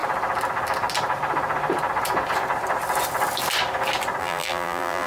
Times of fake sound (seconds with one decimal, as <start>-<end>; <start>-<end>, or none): 4.2-5.1